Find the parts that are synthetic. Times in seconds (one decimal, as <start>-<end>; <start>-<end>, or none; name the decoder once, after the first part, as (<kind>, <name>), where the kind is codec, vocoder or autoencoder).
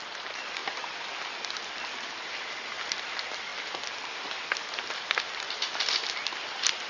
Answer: none